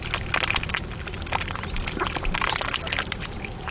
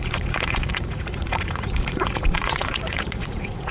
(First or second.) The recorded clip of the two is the first